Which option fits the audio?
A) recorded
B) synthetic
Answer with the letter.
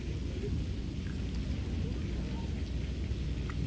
A